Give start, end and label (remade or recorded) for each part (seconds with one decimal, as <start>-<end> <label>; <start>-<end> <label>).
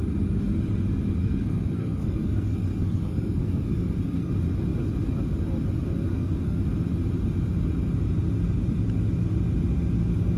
0.0-1.2 recorded; 1.2-4.3 remade; 4.3-6.1 recorded; 6.1-6.6 remade; 6.6-10.4 recorded